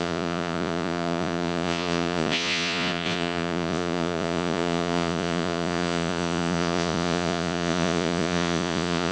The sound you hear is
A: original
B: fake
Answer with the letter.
B